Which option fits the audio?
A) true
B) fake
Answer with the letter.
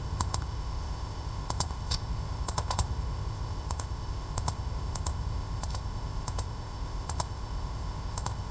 B